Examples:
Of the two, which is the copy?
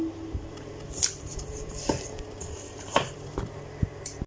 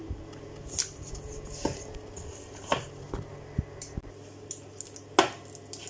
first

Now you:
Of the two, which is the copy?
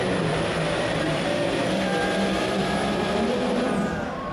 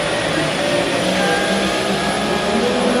first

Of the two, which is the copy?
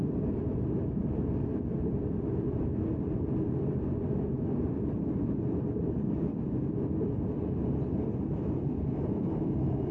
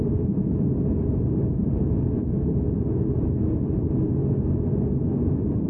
first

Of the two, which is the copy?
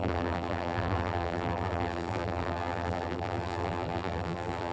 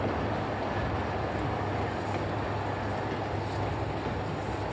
first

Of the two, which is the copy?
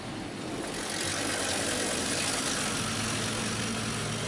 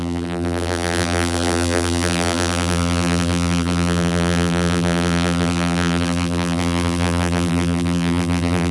second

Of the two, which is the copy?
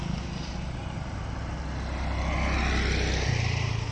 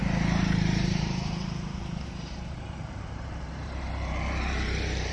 second